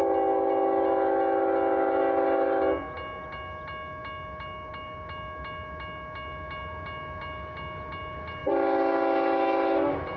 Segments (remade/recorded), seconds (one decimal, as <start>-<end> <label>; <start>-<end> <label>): 0.0-10.2 recorded